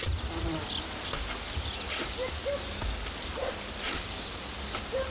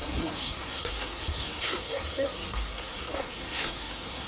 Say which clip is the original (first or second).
first